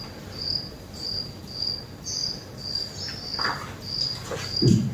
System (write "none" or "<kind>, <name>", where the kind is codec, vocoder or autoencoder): none